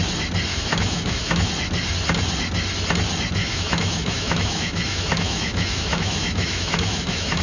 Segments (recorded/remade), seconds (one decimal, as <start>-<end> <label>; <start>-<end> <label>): 0.0-0.5 recorded; 0.5-1.5 remade; 1.5-3.4 recorded; 3.4-7.4 remade

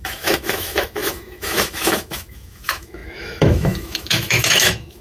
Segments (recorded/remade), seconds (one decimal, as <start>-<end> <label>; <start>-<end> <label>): 0.0-5.0 remade